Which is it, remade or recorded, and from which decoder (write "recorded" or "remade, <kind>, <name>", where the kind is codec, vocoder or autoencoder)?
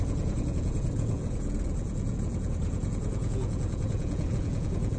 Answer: remade, vocoder, Vocos